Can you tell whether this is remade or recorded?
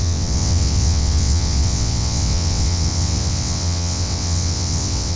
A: remade